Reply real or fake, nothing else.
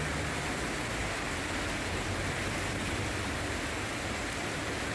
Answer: real